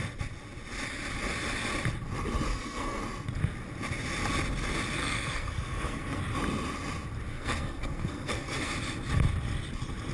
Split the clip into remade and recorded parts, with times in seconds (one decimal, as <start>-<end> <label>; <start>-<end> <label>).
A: 0.0-2.5 recorded; 2.5-3.0 remade; 3.0-5.0 recorded; 5.0-6.2 remade; 6.2-7.3 recorded; 7.3-8.7 remade; 8.7-10.1 recorded